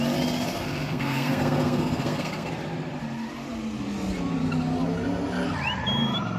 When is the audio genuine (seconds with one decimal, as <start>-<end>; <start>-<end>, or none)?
0.0-0.5; 2.5-6.4